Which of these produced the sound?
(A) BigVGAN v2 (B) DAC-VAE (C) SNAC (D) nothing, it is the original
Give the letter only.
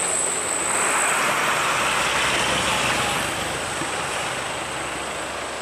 D